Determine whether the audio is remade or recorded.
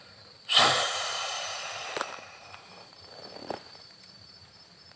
remade